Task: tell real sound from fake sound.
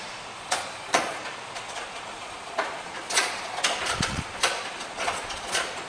fake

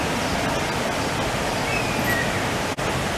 real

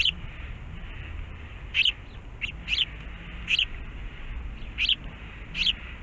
real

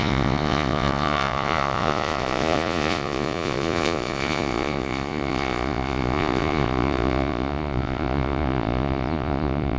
fake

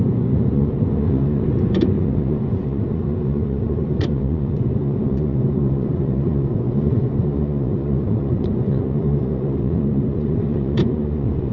fake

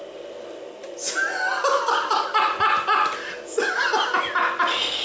real